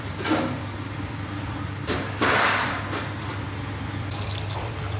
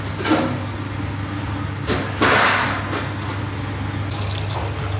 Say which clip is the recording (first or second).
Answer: second